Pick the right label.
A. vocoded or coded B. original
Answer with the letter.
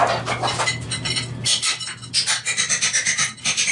B